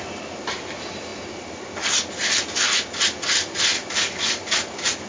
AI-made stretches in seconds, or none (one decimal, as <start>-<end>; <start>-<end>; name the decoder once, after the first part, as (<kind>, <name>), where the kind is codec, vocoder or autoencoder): none